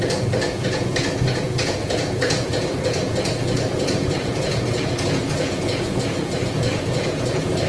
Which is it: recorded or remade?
remade